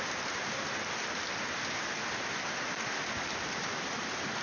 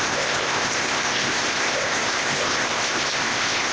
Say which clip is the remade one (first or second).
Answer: second